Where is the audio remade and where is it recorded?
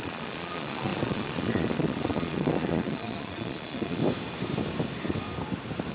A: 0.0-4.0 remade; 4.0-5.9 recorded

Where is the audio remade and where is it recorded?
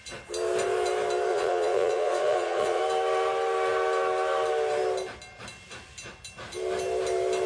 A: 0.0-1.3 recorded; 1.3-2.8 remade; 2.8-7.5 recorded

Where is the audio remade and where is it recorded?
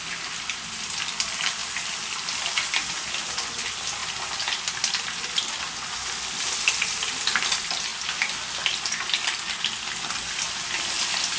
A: 0.0-11.4 recorded